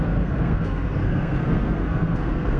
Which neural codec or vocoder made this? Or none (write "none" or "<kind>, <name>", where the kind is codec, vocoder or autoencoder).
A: codec, SNAC